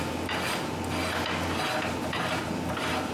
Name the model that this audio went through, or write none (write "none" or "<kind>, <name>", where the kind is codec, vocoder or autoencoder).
none